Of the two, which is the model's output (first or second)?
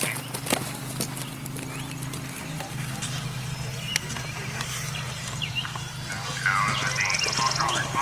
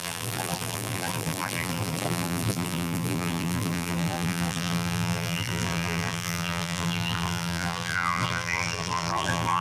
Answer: second